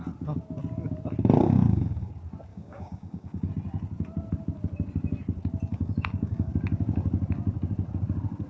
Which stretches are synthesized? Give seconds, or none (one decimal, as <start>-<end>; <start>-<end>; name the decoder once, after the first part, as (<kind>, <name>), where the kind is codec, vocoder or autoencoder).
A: 1.4-2.1 (codec, DAC); 2.5-3.5; 5.7-6.5